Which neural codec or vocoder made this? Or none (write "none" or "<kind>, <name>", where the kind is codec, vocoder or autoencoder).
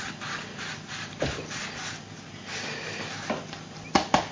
none